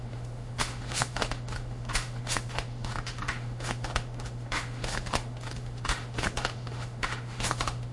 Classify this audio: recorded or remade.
remade